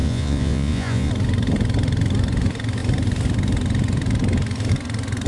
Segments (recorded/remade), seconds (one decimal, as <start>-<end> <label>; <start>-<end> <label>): 0.0-1.1 remade; 1.1-5.3 recorded